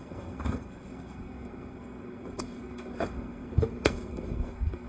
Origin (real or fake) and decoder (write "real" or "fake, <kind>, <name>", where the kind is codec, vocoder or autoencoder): fake, codec, SNAC